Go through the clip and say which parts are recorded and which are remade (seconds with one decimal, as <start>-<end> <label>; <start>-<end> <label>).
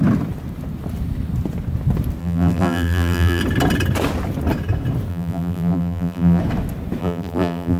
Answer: 0.0-2.2 recorded; 2.2-3.4 remade; 3.4-5.1 recorded; 5.1-6.4 remade; 6.4-7.0 recorded; 7.0-7.8 remade